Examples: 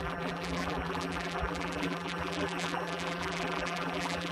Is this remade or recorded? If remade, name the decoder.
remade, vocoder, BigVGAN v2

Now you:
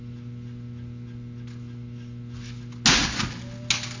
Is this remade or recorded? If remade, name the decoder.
recorded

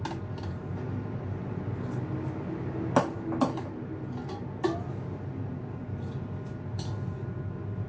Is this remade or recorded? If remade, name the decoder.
recorded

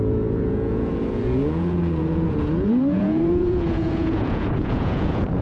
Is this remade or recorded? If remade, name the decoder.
remade, vocoder, Vocos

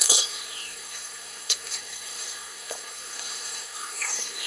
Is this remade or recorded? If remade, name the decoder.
remade, codec, SNAC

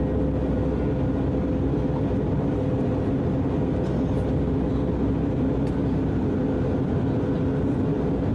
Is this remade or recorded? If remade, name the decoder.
recorded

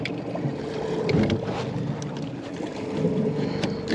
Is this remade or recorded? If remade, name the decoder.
recorded